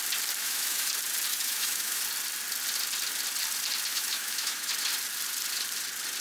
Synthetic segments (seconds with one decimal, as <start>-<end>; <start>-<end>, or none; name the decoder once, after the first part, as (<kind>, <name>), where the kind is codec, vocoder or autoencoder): 0.4-0.9 (autoencoder, DAC-VAE); 1.3-2.0; 3.9-4.7